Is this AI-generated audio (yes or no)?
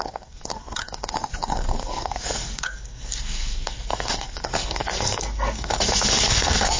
yes